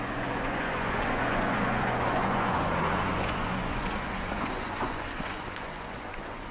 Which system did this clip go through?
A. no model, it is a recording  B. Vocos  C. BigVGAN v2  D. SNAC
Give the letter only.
B